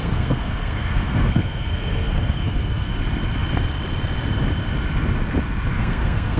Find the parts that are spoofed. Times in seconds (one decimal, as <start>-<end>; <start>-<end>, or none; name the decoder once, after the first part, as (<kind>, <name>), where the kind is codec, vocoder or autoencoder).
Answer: 0.0-2.9 (codec, SNAC); 5.7-6.4